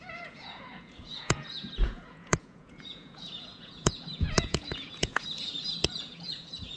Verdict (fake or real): fake